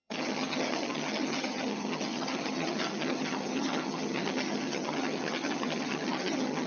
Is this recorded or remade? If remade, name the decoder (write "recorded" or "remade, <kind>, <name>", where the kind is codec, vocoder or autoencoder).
remade, vocoder, HiFi-GAN